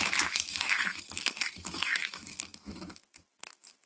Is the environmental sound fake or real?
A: fake